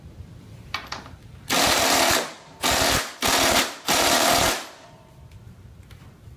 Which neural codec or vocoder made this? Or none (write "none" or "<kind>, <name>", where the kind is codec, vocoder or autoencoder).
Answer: vocoder, BigVGAN v2